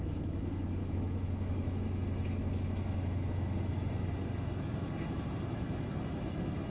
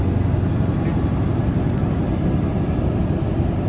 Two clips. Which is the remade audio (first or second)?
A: first